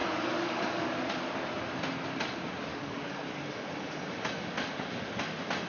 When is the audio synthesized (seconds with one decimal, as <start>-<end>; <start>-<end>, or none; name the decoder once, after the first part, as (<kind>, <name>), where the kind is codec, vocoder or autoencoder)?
0.0-0.9 (codec, DAC); 2.7-3.4

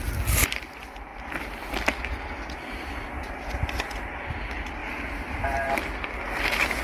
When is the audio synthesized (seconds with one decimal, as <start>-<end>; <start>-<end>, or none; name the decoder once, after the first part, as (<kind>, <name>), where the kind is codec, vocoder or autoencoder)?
4.8-5.7 (vocoder, BigVGAN v2)

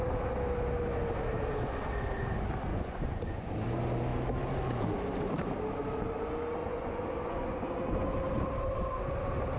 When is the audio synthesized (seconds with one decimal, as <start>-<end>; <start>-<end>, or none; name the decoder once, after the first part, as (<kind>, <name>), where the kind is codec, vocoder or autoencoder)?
2.7-3.5 (vocoder, Vocos); 6.6-7.7